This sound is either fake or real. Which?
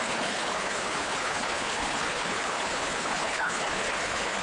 fake